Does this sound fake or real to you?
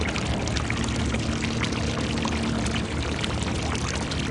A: real